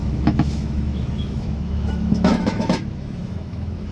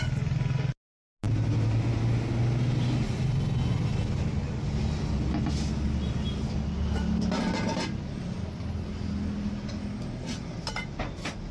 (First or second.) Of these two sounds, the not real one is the first